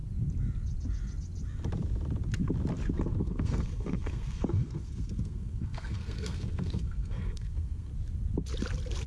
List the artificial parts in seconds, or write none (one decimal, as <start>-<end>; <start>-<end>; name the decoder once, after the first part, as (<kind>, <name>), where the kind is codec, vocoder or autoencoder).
3.2-7.9 (codec, SNAC)